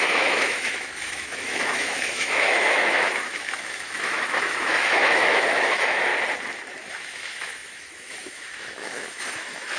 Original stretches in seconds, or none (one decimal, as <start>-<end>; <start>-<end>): 6.1-6.9